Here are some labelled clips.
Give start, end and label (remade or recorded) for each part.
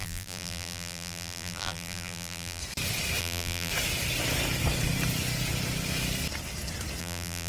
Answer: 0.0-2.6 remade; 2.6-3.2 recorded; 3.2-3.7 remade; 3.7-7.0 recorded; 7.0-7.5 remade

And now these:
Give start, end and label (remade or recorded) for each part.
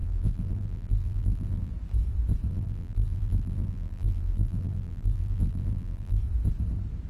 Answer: 0.0-1.7 remade; 1.7-2.5 recorded; 2.5-6.2 remade; 6.2-7.1 recorded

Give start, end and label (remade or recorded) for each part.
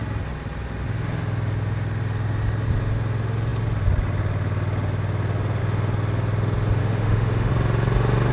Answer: 0.0-6.8 recorded; 6.8-7.5 remade; 7.5-8.3 recorded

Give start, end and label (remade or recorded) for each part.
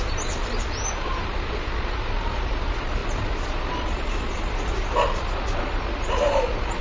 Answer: 0.0-6.8 recorded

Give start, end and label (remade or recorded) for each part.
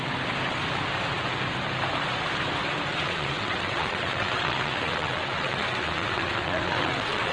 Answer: 0.0-2.9 recorded; 2.9-7.3 remade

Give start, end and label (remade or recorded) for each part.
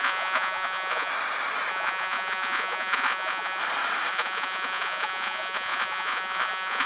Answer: 0.0-1.1 remade; 1.1-1.7 recorded; 1.7-3.6 remade; 3.6-4.1 recorded; 4.1-6.9 remade